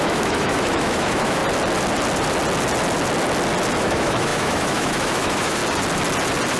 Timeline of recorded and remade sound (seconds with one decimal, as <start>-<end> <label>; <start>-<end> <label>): 0.0-1.4 remade; 1.4-3.8 recorded; 3.8-5.6 remade; 5.6-6.6 recorded